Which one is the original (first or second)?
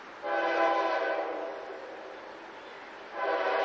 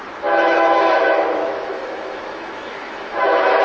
first